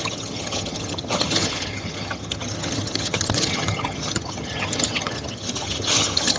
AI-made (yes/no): yes